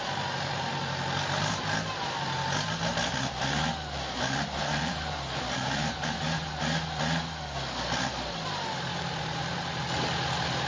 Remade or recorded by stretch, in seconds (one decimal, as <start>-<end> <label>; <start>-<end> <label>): 0.0-4.6 recorded; 4.6-6.6 remade; 6.6-8.9 recorded; 8.9-9.8 remade; 9.8-10.7 recorded